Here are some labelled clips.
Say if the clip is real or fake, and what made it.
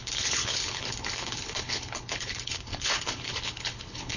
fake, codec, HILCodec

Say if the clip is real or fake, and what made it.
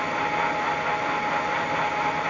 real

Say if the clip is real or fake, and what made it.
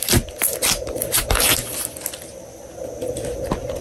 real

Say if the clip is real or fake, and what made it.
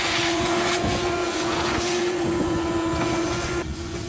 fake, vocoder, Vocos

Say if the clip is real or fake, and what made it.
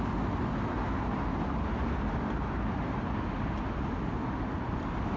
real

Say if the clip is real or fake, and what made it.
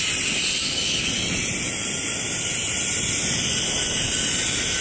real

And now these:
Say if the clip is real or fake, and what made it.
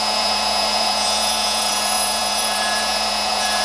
fake, vocoder, Vocos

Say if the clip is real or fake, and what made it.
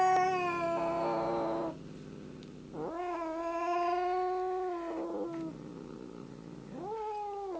real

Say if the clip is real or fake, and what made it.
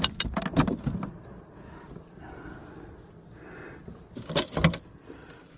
real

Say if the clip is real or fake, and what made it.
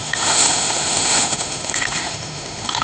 fake, autoencoder, DAC-VAE